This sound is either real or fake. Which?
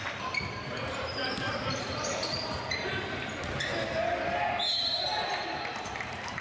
fake